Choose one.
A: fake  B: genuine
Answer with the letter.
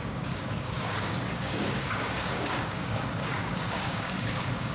A